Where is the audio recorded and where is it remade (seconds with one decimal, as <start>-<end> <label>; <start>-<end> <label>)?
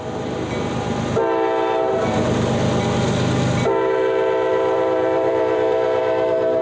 0.0-4.5 recorded; 4.5-6.0 remade; 6.0-6.6 recorded